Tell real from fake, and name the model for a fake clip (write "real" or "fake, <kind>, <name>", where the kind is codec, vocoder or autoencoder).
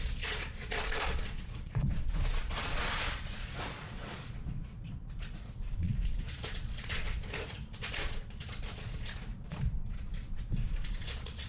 fake, vocoder, Vocos